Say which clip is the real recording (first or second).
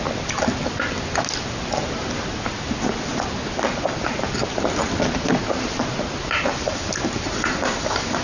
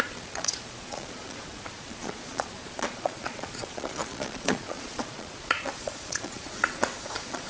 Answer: first